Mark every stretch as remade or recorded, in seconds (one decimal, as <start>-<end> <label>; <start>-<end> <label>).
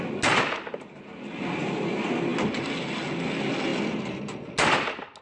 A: 0.0-5.2 recorded